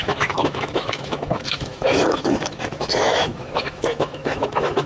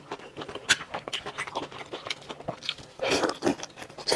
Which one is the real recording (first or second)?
second